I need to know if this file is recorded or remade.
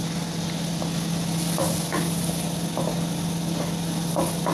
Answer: recorded